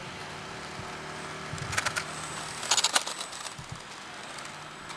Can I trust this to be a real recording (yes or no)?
yes